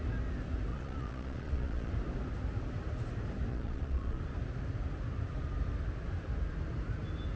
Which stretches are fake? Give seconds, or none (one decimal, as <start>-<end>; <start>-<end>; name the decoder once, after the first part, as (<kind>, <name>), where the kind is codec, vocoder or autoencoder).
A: 0.7-1.9 (vocoder, Vocos); 3.5-4.2